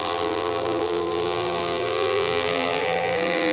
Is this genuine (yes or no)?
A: no